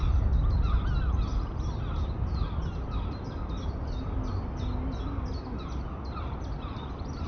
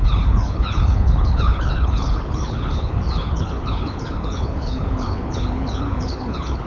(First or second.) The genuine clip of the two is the first